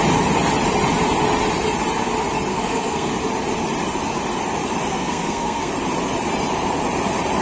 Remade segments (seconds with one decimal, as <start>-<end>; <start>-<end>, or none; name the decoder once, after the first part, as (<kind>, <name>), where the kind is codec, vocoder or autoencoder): 2.5-3.1 (codec, SNAC); 4.9-5.7